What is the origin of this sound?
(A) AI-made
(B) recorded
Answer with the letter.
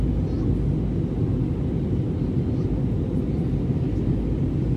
B